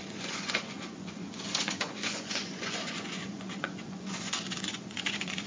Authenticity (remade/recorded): remade